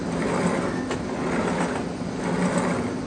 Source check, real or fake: real